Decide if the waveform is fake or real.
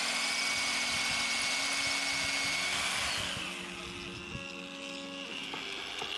real